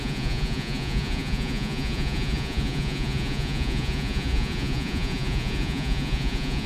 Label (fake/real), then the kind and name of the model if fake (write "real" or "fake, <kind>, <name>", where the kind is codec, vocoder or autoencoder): fake, vocoder, Vocos